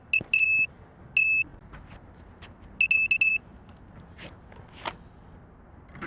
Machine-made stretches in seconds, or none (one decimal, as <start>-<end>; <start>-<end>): none